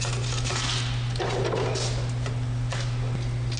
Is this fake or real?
real